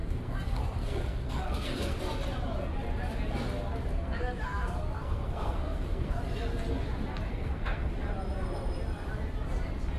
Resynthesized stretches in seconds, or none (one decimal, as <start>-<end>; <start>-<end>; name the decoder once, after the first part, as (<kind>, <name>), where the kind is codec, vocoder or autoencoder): 0.0-2.0 (codec, SNAC); 3.9-6.2; 7.3-7.9